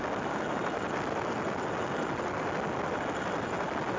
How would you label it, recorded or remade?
recorded